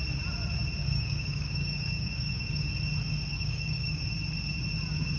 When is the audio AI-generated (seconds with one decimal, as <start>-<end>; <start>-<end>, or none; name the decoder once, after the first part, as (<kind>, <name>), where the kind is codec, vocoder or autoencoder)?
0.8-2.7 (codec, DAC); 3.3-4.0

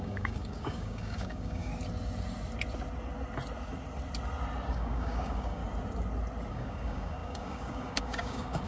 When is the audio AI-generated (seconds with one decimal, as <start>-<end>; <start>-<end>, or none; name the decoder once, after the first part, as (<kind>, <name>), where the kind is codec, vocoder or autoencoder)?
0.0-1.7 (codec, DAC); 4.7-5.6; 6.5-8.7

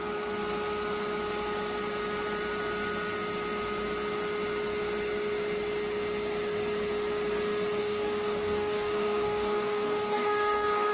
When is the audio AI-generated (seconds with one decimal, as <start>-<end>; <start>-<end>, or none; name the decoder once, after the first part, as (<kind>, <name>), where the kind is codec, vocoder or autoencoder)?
7.8-10.9 (codec, DAC)

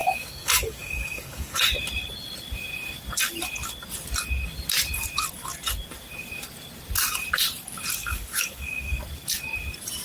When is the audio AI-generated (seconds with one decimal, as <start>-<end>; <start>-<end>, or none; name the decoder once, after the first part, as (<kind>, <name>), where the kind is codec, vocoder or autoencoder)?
0.0-1.6 (codec, DAC); 8.0-9.0

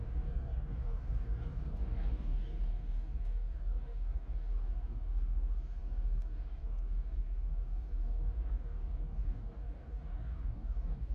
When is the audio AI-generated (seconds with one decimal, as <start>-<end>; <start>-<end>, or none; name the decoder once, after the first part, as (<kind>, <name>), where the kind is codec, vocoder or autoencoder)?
0.0-11.1 (codec, DAC)

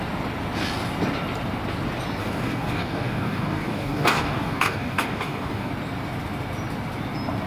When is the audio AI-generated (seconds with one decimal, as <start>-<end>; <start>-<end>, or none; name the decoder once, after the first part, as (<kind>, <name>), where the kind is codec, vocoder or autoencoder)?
2.2-5.7 (codec, DAC)

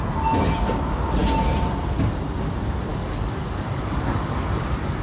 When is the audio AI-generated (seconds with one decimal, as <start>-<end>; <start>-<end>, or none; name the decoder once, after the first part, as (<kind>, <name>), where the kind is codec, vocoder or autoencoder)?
2.9-4.6 (codec, DAC)

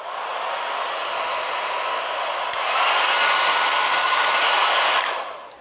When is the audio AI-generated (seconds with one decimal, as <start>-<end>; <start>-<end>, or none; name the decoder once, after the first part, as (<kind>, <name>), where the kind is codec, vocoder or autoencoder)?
3.5-4.2 (codec, DAC)